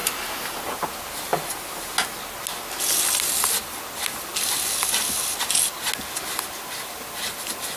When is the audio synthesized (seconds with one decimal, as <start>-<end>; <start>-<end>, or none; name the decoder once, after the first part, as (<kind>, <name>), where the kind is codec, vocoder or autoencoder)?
none